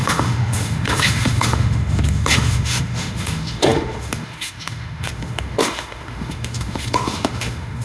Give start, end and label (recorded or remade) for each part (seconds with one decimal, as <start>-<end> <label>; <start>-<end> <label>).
0.0-7.8 remade